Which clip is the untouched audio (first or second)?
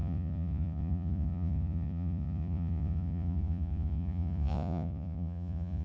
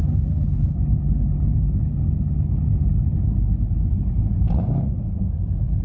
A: second